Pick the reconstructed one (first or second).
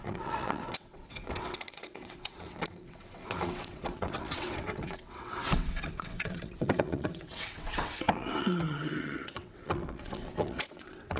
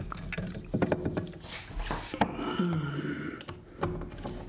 first